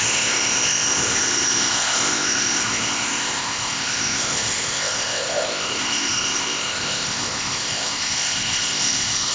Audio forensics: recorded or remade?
remade